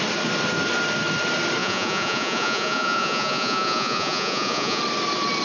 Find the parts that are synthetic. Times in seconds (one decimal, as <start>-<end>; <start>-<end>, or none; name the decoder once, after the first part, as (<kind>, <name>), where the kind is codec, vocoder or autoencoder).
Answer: 1.6-4.8 (vocoder, Vocos)